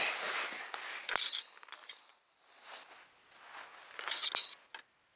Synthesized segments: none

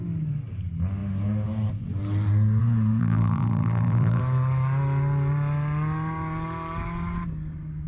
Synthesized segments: 3.0-4.2 (vocoder, BigVGAN v2)

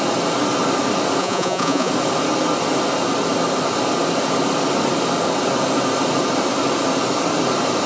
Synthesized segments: 1.2-1.9 (vocoder, Vocos)

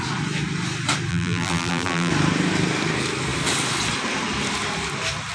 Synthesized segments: 1.1-2.1 (vocoder, BigVGAN v2)

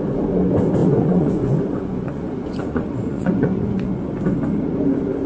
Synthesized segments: 0.8-4.0 (vocoder, Vocos)